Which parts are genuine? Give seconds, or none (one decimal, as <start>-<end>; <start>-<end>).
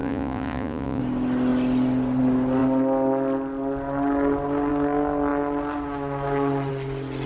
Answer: 1.0-7.3